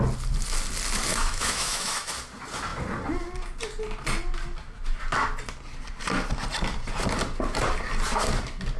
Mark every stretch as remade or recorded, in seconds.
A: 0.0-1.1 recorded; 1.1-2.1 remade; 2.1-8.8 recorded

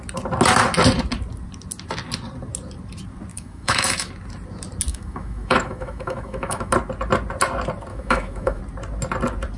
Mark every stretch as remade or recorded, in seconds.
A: 0.0-3.3 recorded; 3.3-4.1 remade; 4.1-4.9 recorded; 4.9-6.7 remade; 6.7-7.9 recorded; 7.9-8.6 remade; 8.6-9.6 recorded

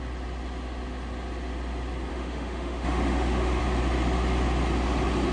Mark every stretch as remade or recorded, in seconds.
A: 0.0-2.1 recorded; 2.1-3.6 remade; 3.6-5.3 recorded

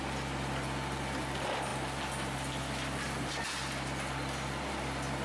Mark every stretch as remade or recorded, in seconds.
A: 0.0-5.2 recorded

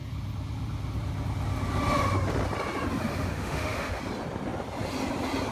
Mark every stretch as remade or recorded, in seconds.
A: 0.0-3.1 recorded; 3.1-4.0 remade; 4.0-5.5 recorded

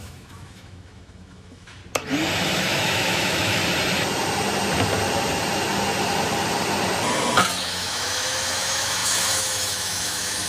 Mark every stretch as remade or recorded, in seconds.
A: 0.0-1.8 remade; 1.8-2.4 recorded; 2.4-3.6 remade; 3.6-7.6 recorded; 7.6-10.5 remade

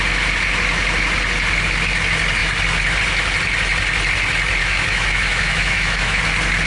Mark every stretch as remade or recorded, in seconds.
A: 0.0-4.6 recorded; 4.6-6.2 remade; 6.2-6.7 recorded